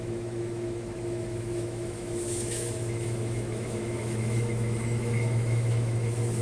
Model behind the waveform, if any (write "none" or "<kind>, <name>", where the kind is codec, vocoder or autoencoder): autoencoder, DAC-VAE